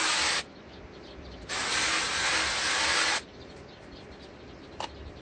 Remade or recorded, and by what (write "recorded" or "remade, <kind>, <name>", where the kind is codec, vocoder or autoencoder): recorded